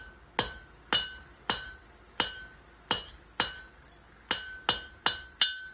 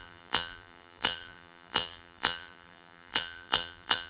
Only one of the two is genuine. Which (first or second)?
first